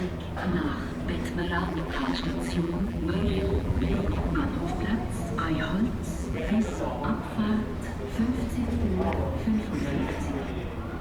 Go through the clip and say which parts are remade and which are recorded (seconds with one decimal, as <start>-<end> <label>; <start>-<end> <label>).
0.0-1.4 recorded; 1.4-4.4 remade; 4.4-6.2 recorded; 6.2-6.8 remade; 6.8-11.0 recorded